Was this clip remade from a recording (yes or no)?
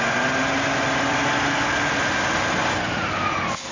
no